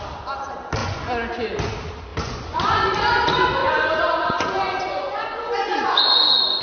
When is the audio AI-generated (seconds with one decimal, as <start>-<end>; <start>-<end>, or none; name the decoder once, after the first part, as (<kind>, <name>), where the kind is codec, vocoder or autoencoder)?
0.8-1.7 (vocoder, Vocos); 2.1-2.8; 3.6-6.6